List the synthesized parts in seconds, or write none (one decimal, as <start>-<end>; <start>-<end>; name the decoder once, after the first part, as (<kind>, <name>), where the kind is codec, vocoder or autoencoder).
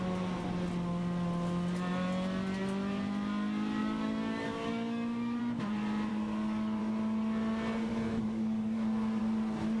3.8-5.4 (codec, DAC); 6.1-6.8; 7.9-9.2